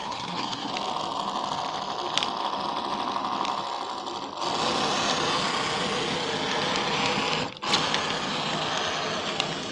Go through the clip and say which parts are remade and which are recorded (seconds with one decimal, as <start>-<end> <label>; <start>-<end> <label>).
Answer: 0.0-0.7 remade; 0.7-9.7 recorded